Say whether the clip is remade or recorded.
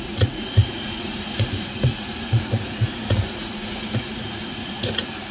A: remade